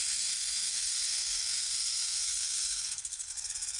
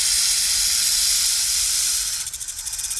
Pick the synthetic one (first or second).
first